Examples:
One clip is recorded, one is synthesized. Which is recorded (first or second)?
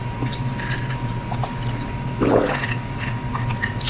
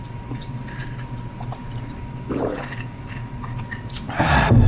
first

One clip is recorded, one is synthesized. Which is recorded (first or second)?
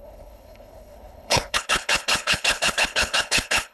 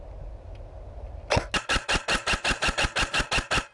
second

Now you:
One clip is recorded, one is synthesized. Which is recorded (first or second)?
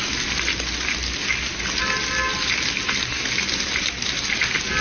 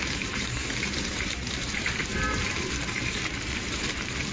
first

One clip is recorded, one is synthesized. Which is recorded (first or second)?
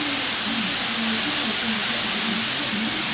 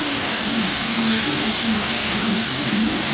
first